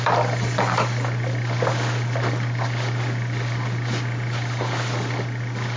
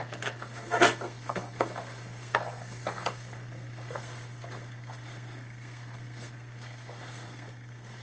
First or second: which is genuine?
first